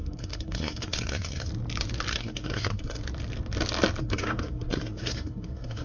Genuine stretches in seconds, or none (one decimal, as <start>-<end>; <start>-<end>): 1.5-2.1; 3.0-4.0

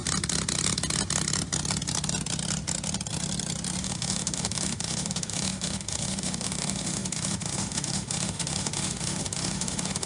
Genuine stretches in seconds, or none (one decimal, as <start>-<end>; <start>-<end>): 0.0-3.8

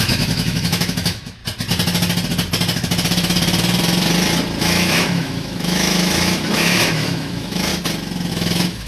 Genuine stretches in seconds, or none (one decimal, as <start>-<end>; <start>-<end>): 1.4-4.6; 7.7-8.3

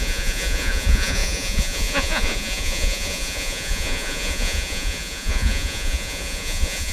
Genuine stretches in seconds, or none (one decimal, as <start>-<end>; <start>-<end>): none

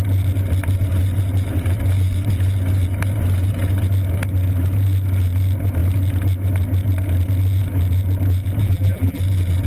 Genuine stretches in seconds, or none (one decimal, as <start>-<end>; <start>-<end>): 0.0-8.6; 9.2-9.7

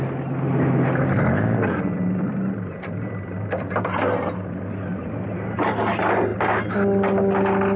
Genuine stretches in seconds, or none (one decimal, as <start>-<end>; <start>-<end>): 0.0-7.8

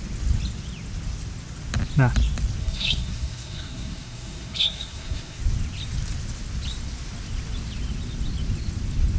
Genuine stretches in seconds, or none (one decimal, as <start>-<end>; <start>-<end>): 0.0-2.6; 5.4-9.2